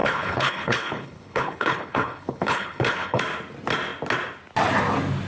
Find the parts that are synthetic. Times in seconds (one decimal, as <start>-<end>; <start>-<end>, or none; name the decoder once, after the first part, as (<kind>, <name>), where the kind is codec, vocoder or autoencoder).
0.0-3.2 (codec, HILCodec)